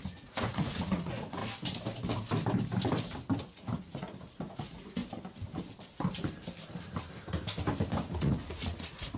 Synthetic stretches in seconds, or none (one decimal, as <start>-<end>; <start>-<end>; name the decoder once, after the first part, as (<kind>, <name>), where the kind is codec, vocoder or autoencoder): 0.0-1.4 (vocoder, Vocos); 3.4-5.0; 8.2-9.2